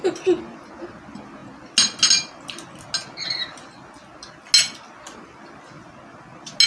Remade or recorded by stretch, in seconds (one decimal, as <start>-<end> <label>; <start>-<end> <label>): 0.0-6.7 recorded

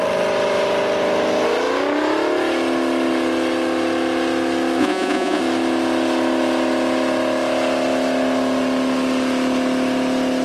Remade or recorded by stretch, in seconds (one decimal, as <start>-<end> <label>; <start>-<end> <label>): 0.0-4.8 recorded; 4.8-5.4 remade; 5.4-10.4 recorded

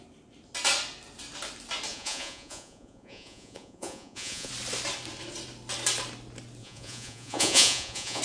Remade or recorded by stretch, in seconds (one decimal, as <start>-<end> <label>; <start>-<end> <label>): 0.0-1.9 recorded; 1.9-4.5 remade; 4.5-6.6 recorded; 6.6-8.2 remade